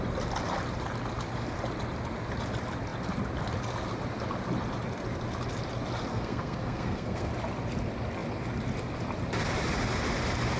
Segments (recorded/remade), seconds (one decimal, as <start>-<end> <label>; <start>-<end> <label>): 0.0-6.1 recorded; 6.1-7.3 remade; 7.3-10.6 recorded